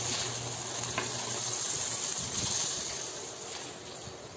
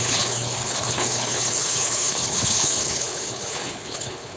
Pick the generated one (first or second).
second